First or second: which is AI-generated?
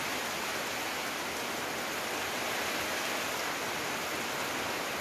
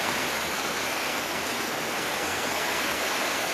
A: second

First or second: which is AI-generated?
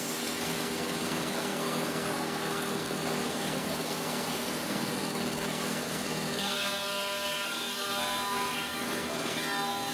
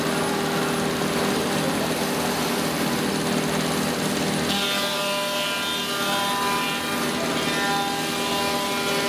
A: first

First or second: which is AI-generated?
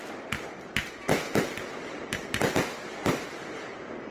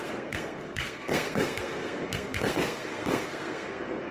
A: second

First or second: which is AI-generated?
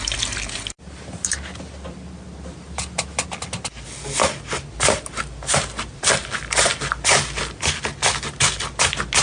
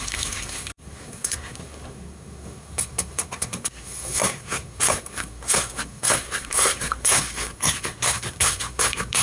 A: second